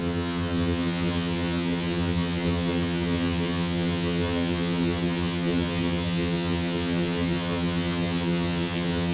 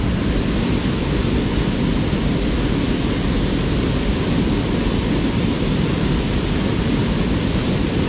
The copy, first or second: first